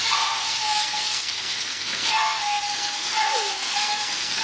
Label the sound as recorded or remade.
remade